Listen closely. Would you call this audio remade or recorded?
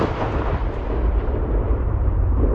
recorded